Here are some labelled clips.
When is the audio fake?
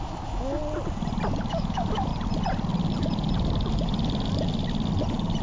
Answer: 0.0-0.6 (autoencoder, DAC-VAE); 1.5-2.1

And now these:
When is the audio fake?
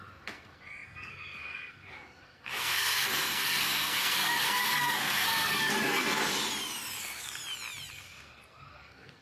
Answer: 0.0-6.2 (codec, SNAC); 7.0-7.4; 7.9-9.2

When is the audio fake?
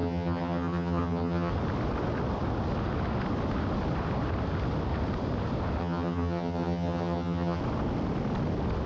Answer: 0.0-1.5 (vocoder, HiFi-GAN); 5.8-7.6